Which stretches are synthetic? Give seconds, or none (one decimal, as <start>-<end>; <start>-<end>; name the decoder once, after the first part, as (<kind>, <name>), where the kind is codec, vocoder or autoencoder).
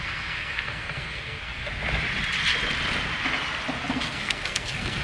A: 0.0-1.7 (codec, SNAC); 3.8-5.0